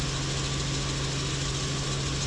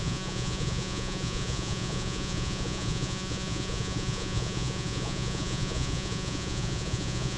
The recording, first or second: first